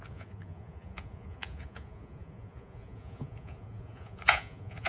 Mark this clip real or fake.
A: fake